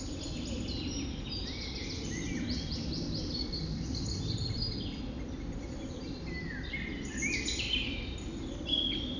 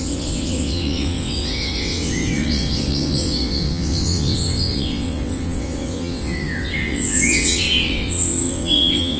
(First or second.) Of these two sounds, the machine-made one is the second